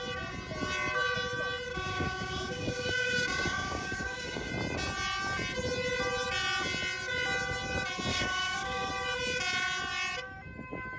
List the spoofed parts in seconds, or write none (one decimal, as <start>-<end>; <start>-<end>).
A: 1.7-4.5; 8.1-8.9